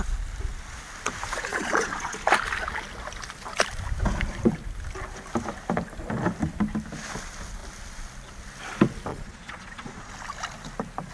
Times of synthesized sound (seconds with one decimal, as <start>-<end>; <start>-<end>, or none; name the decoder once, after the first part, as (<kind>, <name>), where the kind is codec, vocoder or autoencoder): 1.5-2.2 (vocoder, Vocos); 9.1-10.1